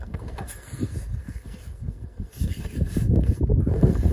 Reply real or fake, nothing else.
fake